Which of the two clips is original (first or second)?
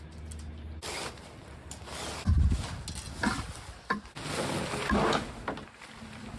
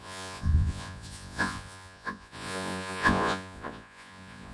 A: first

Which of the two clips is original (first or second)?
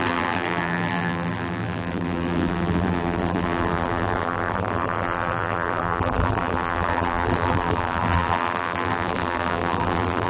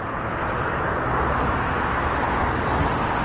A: second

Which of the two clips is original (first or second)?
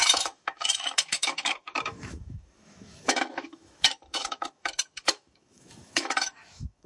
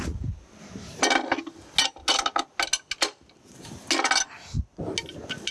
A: second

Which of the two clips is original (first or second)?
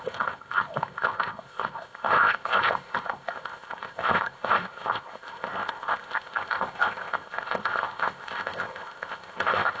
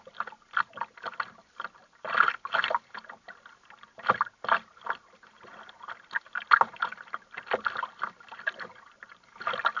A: second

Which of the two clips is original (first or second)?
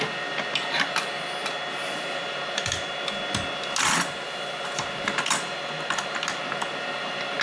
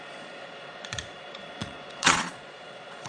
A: first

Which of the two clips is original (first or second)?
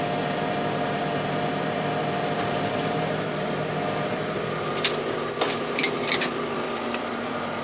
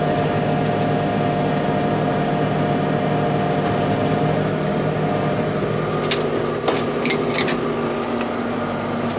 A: second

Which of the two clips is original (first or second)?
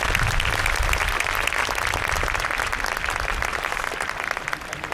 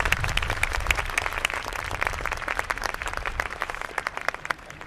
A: first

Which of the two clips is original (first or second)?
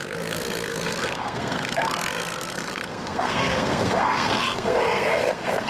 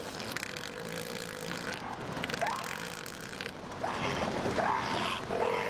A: second